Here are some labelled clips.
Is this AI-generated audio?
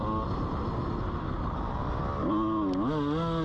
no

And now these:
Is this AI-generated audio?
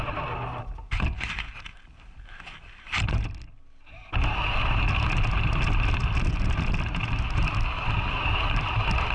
no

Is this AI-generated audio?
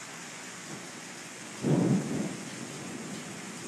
yes